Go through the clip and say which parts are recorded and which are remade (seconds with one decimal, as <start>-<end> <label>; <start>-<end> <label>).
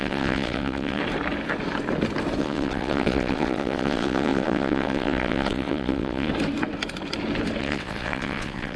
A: 0.0-1.0 remade; 1.0-2.4 recorded; 2.4-6.3 remade; 6.3-7.6 recorded; 7.6-8.8 remade